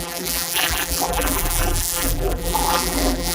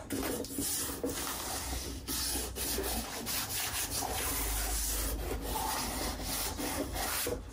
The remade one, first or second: first